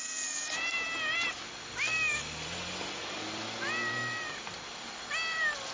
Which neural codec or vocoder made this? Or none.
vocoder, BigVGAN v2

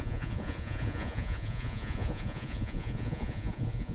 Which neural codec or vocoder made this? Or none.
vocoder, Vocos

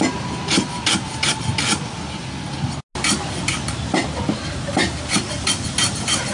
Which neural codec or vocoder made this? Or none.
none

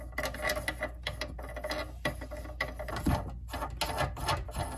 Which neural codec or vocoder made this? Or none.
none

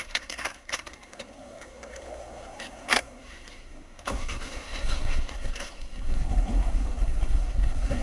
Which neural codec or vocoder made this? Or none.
codec, SNAC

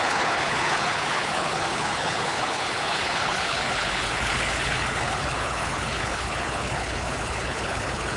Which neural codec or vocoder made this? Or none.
codec, HILCodec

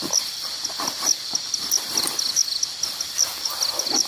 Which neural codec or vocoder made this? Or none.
vocoder, BigVGAN v2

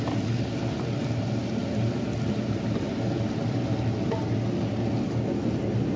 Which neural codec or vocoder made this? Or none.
none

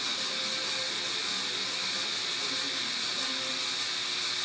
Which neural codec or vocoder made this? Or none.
none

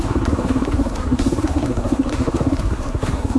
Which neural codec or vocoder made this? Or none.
codec, SNAC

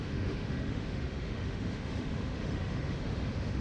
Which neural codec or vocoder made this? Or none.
autoencoder, DAC-VAE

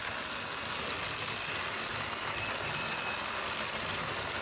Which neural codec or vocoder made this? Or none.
none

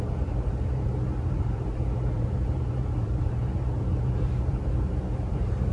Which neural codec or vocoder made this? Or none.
vocoder, BigVGAN v2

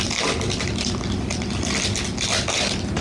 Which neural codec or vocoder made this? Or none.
none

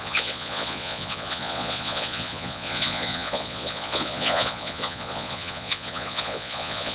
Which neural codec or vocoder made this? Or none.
vocoder, Vocos